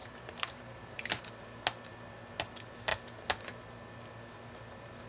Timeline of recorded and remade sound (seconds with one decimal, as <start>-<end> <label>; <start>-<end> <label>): 0.0-1.2 remade; 1.2-5.1 recorded